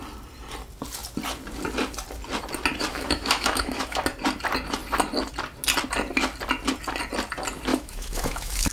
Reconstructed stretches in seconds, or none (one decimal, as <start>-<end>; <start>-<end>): 2.9-4.0; 7.7-8.7